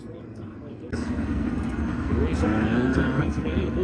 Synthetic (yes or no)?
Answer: yes